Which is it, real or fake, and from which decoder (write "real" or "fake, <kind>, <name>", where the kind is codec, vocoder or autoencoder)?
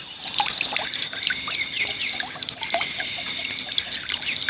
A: real